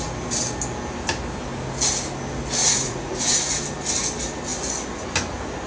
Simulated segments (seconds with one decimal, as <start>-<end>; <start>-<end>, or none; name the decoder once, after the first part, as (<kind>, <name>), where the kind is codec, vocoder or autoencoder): 2.6-3.2 (vocoder, Vocos)